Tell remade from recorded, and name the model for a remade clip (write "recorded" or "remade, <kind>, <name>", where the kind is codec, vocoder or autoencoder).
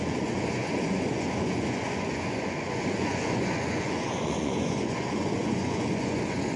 remade, vocoder, Vocos